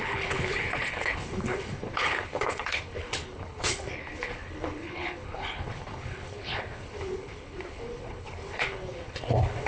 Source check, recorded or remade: remade